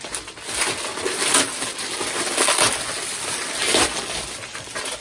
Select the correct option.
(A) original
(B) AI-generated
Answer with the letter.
A